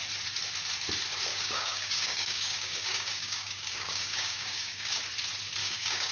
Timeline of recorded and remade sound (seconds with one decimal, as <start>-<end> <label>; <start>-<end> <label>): 0.0-1.3 recorded; 1.3-5.0 remade; 5.0-5.6 recorded; 5.6-6.1 remade